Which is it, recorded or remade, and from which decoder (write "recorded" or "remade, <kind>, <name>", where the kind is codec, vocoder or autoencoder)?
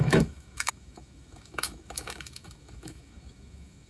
remade, autoencoder, DAC-VAE